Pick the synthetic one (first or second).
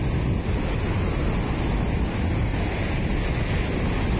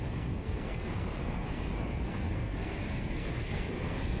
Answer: second